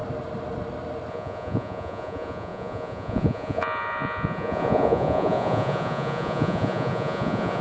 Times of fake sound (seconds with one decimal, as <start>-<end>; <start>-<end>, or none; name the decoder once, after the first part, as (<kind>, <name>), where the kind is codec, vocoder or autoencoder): 1.1-7.6 (vocoder, Vocos)